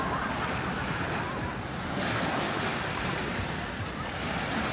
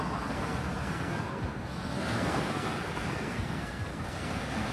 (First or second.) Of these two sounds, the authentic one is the first